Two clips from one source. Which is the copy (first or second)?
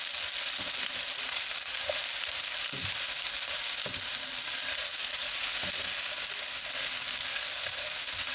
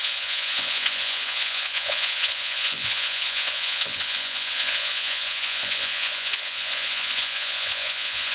second